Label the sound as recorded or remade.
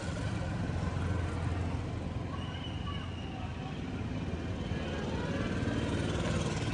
recorded